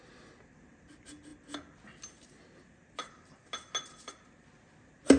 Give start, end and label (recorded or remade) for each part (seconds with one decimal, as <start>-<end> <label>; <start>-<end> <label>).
0.0-5.2 recorded